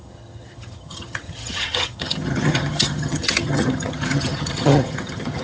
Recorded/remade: remade